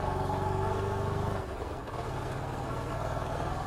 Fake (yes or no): yes